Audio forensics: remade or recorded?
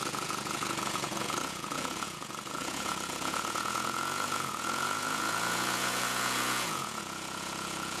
remade